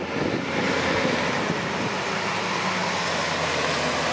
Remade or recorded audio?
recorded